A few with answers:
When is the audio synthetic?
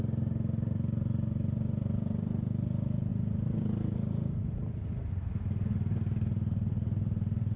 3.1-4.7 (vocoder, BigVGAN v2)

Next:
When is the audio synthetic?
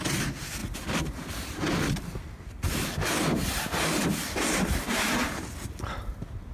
none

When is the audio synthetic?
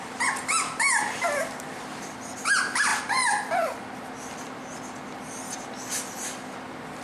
none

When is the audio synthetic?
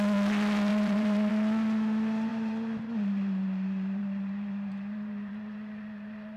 0.7-1.3 (vocoder, BigVGAN v2); 2.3-6.4